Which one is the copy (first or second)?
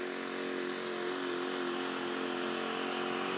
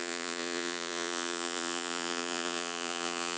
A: second